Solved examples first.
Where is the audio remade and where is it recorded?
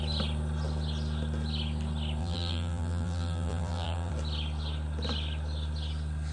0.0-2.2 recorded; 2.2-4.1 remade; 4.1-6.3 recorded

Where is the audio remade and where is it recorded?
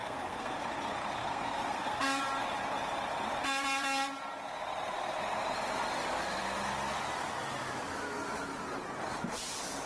0.0-0.6 remade; 0.6-1.2 recorded; 1.2-2.2 remade; 2.2-9.9 recorded